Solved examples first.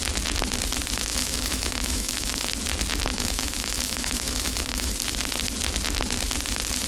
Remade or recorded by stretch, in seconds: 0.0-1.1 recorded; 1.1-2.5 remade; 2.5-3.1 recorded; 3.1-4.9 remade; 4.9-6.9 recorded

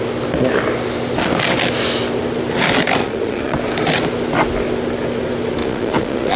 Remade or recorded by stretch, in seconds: 0.0-3.0 recorded; 3.0-3.6 remade; 3.6-5.6 recorded; 5.6-6.4 remade

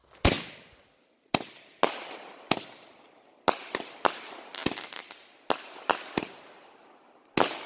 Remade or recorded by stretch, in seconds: 0.0-7.7 recorded

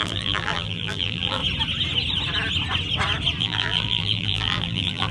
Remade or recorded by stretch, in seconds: 0.0-1.4 remade; 1.4-3.4 recorded; 3.4-5.1 remade

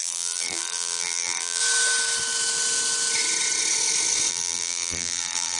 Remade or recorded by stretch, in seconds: 0.0-1.6 remade; 1.6-4.3 recorded; 4.3-5.6 remade

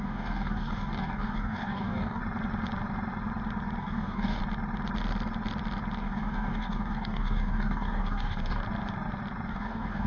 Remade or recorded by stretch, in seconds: 0.0-2.2 remade; 2.2-3.8 recorded; 3.8-4.4 remade; 4.4-6.0 recorded; 6.0-8.6 remade; 8.6-9.5 recorded; 9.5-10.1 remade